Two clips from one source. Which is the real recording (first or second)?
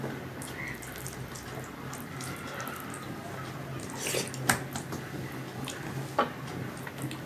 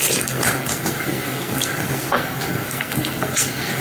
first